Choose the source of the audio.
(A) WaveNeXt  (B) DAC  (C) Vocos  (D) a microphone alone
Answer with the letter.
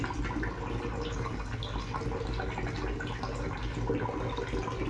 D